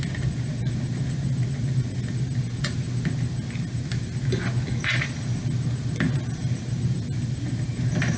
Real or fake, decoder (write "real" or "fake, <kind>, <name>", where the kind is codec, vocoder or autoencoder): real